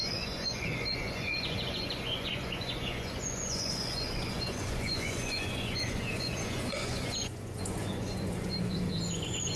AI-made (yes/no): yes